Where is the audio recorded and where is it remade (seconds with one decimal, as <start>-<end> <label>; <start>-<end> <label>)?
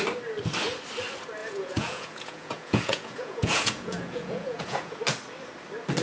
0.0-1.4 recorded; 1.4-5.0 remade; 5.0-6.0 recorded